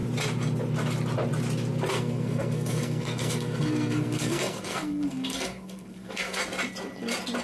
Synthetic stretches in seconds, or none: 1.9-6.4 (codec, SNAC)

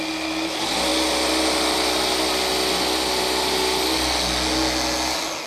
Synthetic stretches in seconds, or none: none

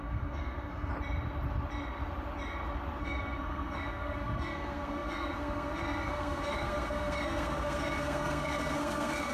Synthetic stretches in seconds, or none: 0.0-0.9 (codec, SNAC); 3.0-9.3

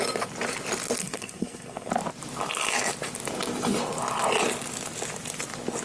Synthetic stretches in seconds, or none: 1.0-1.9 (codec, SNAC)

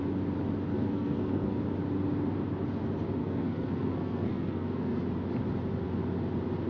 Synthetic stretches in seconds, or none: 0.7-1.6 (codec, SNAC); 3.2-5.0

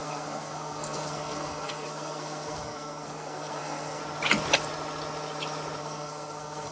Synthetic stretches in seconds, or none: 0.0-4.0 (codec, SNAC); 5.8-6.7

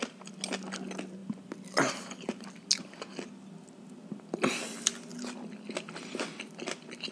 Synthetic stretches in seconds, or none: none

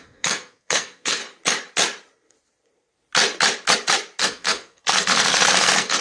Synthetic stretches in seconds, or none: 0.0-1.2 (codec, SNAC); 4.2-6.0